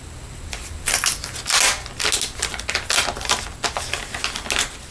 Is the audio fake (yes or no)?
no